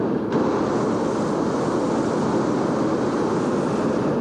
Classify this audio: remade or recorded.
recorded